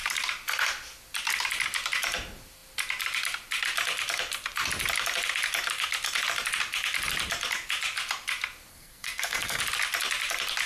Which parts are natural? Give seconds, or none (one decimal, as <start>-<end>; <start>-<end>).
0.0-8.7; 9.6-10.7